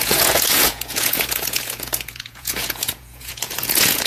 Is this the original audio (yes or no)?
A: no